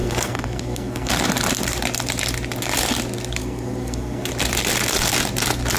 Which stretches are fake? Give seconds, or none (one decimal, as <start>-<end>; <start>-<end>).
0.0-1.1; 3.4-4.3